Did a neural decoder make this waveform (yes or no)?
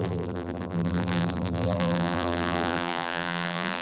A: yes